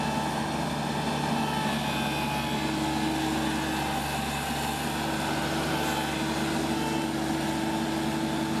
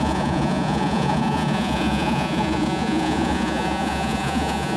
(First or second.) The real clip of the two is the first